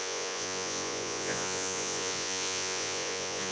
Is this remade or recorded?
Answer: remade